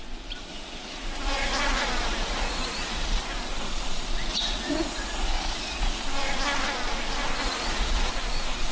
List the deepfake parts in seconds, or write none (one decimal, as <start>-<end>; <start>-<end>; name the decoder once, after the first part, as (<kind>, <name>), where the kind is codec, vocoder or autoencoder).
0.5-3.2 (vocoder, Vocos); 4.3-6.0; 7.4-8.1